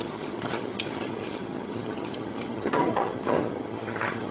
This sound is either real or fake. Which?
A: fake